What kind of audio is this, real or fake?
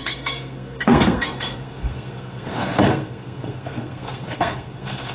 fake